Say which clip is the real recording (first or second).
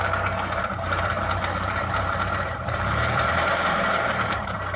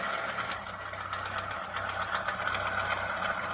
second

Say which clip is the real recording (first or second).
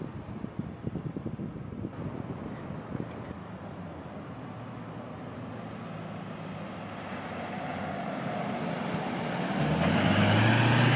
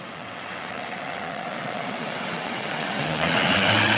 first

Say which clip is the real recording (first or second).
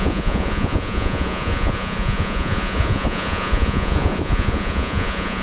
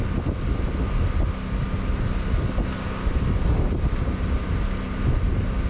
second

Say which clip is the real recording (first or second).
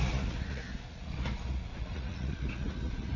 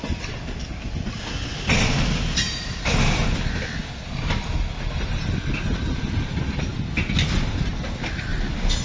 second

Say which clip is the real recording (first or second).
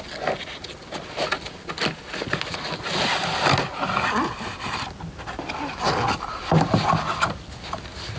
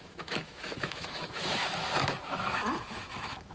first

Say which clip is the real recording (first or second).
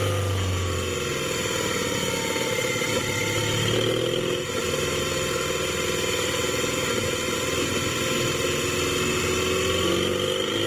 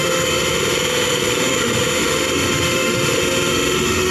first